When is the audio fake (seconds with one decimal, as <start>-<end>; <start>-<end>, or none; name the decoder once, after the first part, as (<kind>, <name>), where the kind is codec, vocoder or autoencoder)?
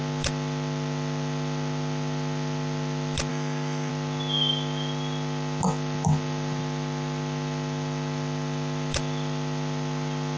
3.3-3.9 (autoencoder, DAC-VAE)